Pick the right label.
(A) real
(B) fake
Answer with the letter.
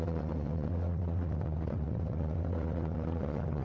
B